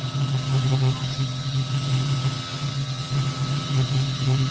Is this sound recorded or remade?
remade